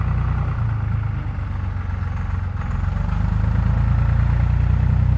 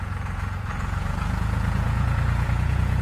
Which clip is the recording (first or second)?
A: first